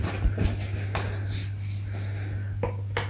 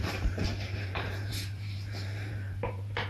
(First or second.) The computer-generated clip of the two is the second